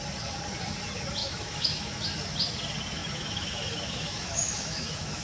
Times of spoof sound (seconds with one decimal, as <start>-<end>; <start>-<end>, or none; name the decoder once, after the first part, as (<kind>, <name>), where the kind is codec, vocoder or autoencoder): 1.2-2.0 (autoencoder, DAC-VAE); 3.0-5.2